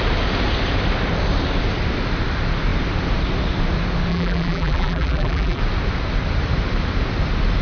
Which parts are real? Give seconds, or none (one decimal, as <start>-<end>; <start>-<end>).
0.0-4.1; 5.6-7.6